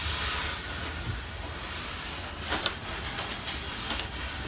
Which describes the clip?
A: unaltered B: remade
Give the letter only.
A